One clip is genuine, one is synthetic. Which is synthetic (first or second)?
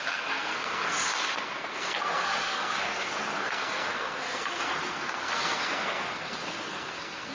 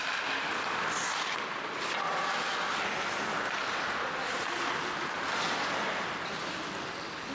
first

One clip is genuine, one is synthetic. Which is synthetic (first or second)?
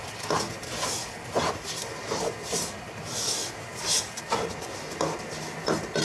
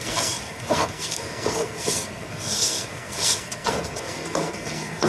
second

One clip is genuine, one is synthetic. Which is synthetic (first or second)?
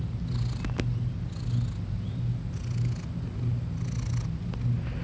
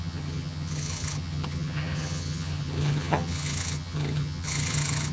second